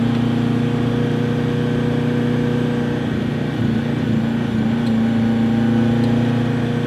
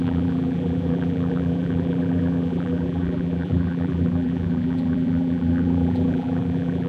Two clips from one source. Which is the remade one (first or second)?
second